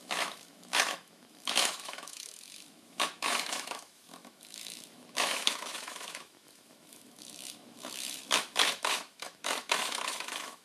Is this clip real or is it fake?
fake